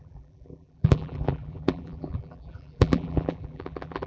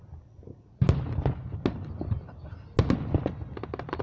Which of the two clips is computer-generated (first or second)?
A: first